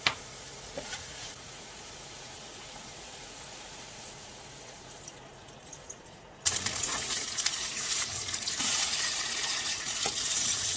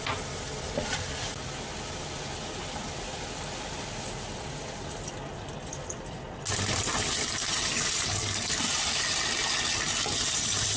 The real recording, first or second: second